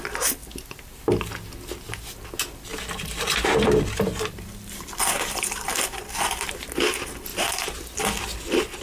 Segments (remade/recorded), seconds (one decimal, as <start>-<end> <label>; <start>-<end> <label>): 0.0-2.7 recorded; 2.7-5.7 remade; 5.7-7.3 recorded; 7.3-8.0 remade; 8.0-8.8 recorded